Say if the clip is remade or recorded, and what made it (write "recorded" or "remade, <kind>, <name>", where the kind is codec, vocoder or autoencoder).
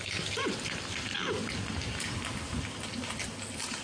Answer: recorded